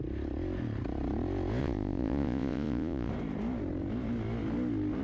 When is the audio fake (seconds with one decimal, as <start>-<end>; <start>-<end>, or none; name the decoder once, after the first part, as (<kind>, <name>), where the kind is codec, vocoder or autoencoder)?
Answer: 1.6-3.1 (vocoder, Vocos)